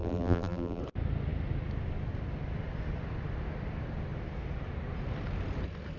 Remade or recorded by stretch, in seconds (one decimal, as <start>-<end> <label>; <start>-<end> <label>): 0.0-0.8 remade; 0.8-6.0 recorded